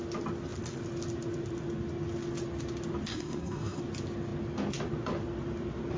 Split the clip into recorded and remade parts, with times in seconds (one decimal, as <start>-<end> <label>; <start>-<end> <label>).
0.0-3.1 recorded; 3.1-3.8 remade; 3.8-6.0 recorded